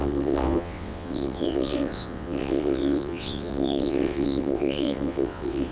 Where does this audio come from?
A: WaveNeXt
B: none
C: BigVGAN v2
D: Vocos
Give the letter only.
A